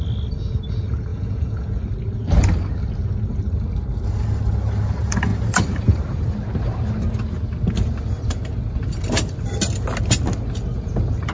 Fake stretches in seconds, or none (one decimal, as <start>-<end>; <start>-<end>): 1.1-1.8